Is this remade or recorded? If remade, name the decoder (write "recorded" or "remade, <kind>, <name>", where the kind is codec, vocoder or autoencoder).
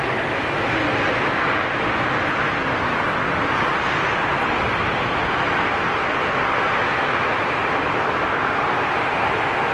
recorded